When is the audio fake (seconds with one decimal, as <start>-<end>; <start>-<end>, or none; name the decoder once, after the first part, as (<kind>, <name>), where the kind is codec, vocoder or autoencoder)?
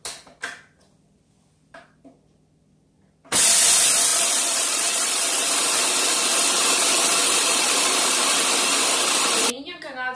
4.1-5.6 (vocoder, BigVGAN v2); 7.2-8.3